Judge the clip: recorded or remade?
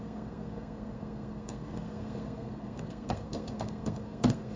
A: remade